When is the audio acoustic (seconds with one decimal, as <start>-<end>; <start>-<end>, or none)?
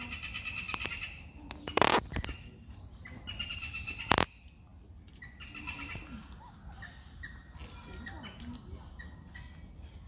0.0-4.7; 5.2-10.1